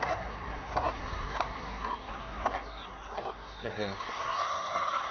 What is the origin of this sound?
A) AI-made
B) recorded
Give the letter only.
A